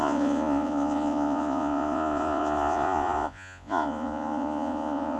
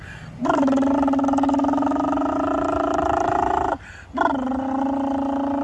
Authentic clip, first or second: second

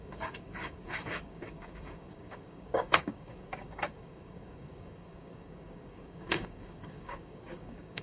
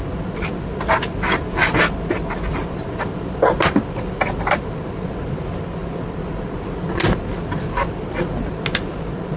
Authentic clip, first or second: second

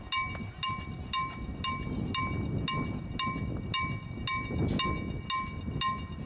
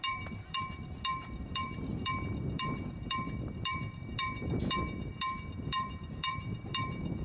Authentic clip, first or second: first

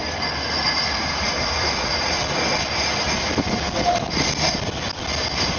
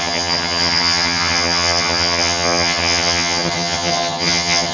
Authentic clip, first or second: first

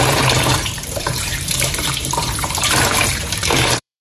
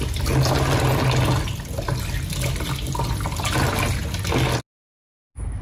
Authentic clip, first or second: second